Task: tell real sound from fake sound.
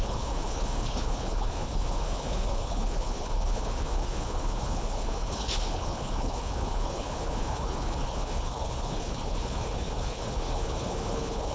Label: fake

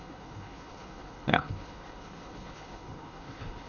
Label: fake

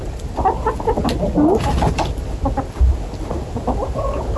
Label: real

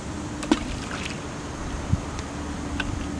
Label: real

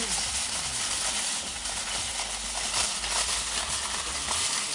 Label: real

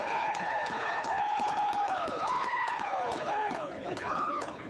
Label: fake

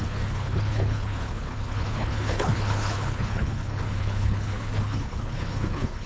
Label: fake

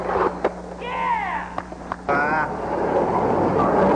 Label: real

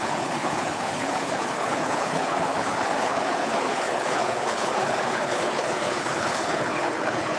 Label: fake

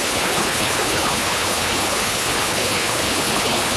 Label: fake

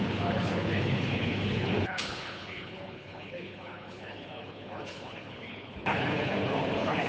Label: fake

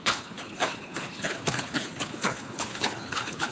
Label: fake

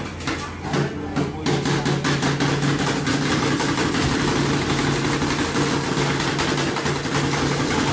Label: real